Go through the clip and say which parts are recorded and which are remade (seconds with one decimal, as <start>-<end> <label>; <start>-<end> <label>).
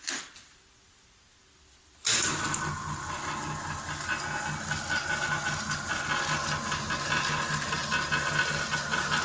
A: 0.0-9.2 recorded